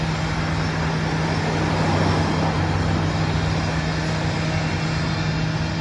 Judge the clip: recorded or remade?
recorded